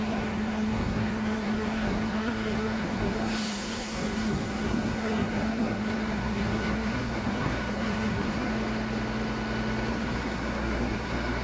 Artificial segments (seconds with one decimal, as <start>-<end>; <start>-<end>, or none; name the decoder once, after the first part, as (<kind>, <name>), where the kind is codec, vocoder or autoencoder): 0.0-8.5 (codec, SNAC); 9.9-11.4